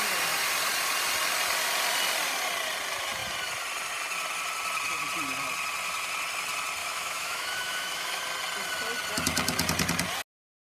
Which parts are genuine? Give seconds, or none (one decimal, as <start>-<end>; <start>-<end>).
0.0-6.8; 8.2-10.7